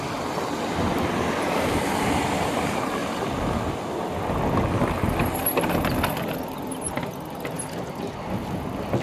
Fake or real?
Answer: real